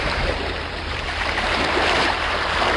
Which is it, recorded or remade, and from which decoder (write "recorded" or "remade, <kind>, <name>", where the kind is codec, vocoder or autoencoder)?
remade, vocoder, BigVGAN v2